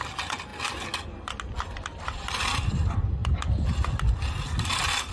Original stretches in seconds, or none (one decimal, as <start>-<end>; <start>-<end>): 0.0-5.1